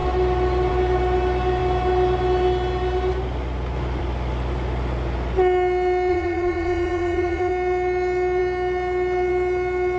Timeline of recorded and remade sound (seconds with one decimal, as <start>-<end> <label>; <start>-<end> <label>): 0.0-6.1 recorded; 6.1-7.5 remade; 7.5-10.0 recorded